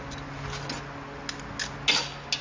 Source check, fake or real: real